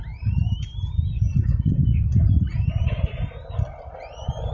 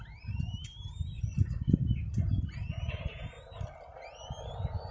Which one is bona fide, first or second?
second